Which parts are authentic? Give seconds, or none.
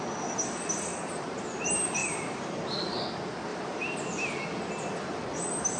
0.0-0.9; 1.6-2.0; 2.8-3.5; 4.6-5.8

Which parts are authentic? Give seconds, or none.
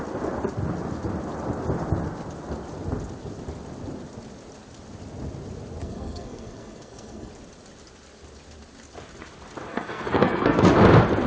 0.0-5.8; 7.3-9.7; 10.7-11.3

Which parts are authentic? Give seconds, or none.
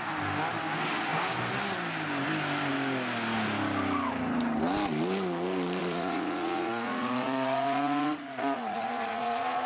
0.0-5.8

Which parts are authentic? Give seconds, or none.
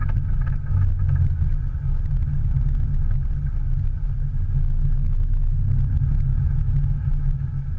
1.0-6.3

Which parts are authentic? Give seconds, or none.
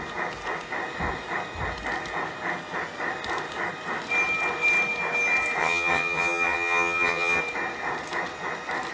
0.0-5.6; 7.4-8.9